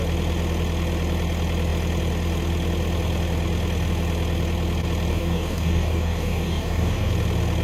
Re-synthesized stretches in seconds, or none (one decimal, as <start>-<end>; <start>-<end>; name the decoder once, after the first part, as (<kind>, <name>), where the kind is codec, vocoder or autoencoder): 5.1-7.1 (codec, DAC)

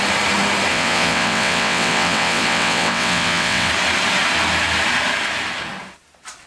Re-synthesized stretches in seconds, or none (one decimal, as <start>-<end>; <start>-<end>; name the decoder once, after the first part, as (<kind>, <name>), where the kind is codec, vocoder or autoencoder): 0.7-3.7 (vocoder, WaveNeXt)

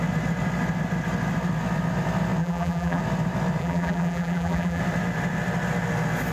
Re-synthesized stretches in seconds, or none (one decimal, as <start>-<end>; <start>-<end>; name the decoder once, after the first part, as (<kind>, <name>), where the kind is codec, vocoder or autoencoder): 2.4-3.0 (vocoder, BigVGAN v2); 3.6-4.8

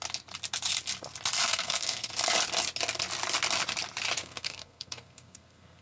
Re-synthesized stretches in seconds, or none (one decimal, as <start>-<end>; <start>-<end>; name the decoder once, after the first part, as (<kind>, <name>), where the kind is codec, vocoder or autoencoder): 1.4-2.1 (codec, SNAC); 4.2-5.8

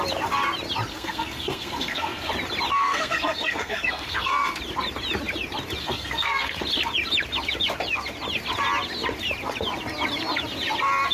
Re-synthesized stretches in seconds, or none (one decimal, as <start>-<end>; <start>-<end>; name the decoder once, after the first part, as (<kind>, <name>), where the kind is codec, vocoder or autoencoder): 0.9-2.3 (codec, SNAC); 2.7-4.6; 5.8-6.6

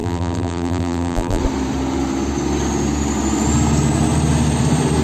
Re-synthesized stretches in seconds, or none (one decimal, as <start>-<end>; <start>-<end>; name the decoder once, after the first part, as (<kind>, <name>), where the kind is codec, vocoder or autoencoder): 0.0-1.4 (vocoder, BigVGAN v2)